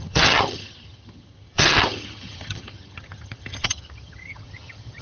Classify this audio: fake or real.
fake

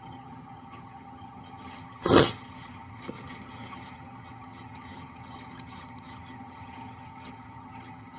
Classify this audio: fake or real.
fake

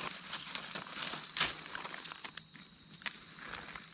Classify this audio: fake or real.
real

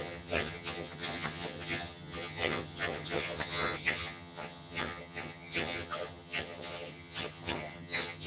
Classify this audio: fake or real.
fake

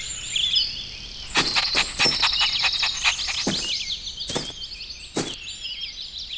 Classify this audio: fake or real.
real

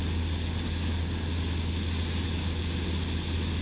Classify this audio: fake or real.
real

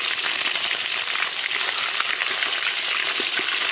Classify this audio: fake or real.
real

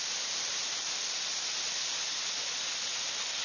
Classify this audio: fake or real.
real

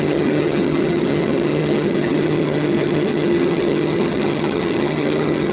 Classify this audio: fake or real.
fake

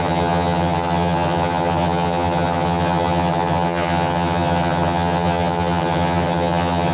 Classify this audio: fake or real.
fake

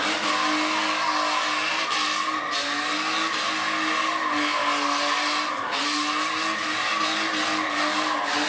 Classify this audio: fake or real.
real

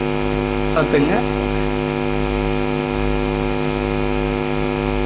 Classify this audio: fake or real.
real